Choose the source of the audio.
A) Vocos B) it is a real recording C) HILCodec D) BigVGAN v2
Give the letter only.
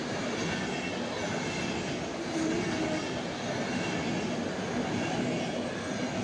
B